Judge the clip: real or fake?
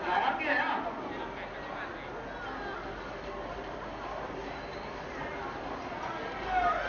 real